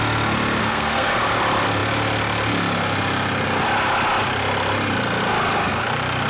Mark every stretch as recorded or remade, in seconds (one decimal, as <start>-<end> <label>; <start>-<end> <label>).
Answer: 0.0-0.6 recorded; 0.6-1.1 remade; 1.1-6.3 recorded

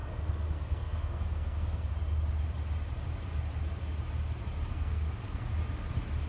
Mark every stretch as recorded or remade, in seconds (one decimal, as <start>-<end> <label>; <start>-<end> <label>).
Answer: 0.0-1.9 remade; 1.9-4.7 recorded; 4.7-5.5 remade; 5.5-6.3 recorded

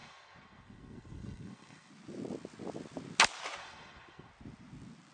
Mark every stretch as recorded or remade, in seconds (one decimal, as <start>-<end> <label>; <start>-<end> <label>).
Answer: 0.0-1.9 remade; 1.9-3.6 recorded; 3.6-4.3 remade; 4.3-5.1 recorded

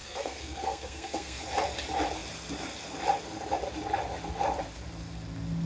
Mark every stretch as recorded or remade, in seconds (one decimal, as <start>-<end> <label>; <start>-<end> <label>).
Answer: 0.0-1.4 remade; 1.4-5.7 recorded

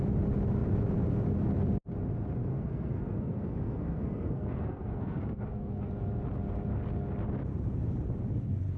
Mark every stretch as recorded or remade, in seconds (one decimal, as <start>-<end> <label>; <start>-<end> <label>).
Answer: 0.0-2.5 recorded; 2.5-5.9 remade; 5.9-8.8 recorded